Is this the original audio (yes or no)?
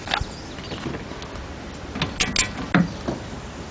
yes